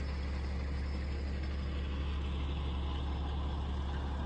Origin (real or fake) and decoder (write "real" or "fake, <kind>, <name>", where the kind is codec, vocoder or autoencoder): real